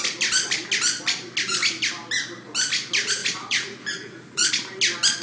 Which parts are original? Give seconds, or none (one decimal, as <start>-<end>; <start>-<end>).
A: 0.0-3.2; 4.5-5.2